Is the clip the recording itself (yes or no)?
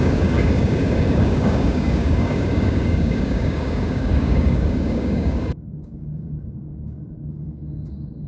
no